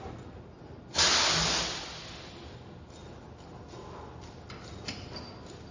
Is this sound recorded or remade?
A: recorded